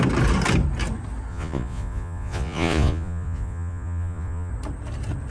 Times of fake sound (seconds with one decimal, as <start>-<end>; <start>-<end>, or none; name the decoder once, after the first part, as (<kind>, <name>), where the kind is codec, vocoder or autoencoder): 1.3-4.5 (vocoder, Vocos)